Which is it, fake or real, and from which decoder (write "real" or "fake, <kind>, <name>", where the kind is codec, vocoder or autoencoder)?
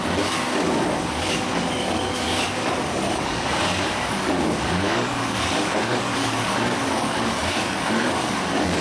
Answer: fake, codec, DAC